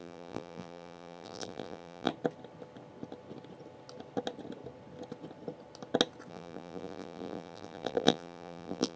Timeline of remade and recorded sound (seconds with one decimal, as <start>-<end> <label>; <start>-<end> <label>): 0.0-2.1 remade; 2.1-6.3 recorded; 6.3-9.0 remade